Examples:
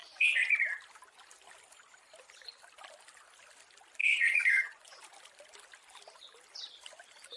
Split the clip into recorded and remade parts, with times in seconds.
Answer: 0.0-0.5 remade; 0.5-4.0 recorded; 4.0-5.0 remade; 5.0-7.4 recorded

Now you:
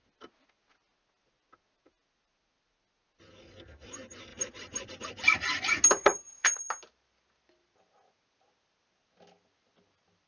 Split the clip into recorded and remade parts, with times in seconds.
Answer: 0.0-4.3 recorded; 4.3-4.9 remade; 4.9-6.0 recorded; 6.0-6.7 remade; 6.7-10.3 recorded

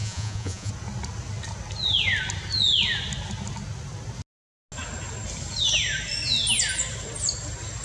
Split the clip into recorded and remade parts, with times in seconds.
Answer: 0.0-0.7 remade; 0.7-7.8 recorded

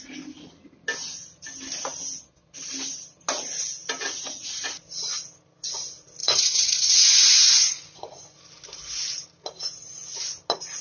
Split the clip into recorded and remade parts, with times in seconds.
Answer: 0.0-6.2 recorded; 6.2-8.4 remade; 8.4-10.8 recorded

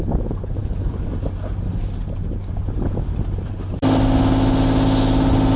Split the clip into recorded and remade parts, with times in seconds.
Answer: 0.0-5.6 recorded

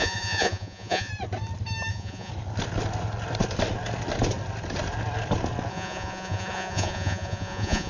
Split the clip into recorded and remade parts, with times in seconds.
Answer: 0.0-1.1 remade; 1.1-1.9 recorded; 1.9-2.3 remade; 2.3-5.7 recorded; 5.7-7.9 remade

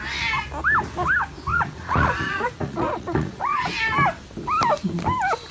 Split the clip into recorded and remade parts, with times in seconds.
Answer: 0.0-1.5 recorded; 1.5-3.7 remade; 3.7-5.5 recorded

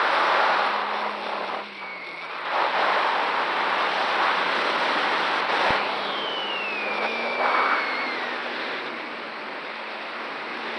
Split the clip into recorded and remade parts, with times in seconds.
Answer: 0.0-10.8 recorded